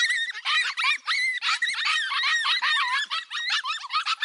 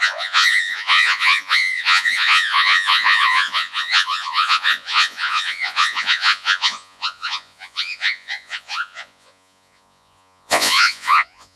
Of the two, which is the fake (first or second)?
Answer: second